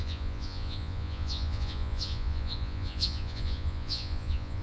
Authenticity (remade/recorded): remade